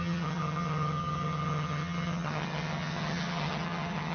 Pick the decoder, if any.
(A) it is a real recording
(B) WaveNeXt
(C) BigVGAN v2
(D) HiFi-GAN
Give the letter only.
D